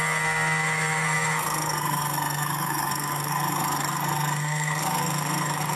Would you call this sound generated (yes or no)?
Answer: yes